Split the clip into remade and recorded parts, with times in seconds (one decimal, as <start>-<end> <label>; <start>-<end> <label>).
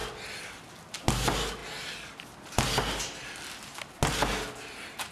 0.0-5.1 recorded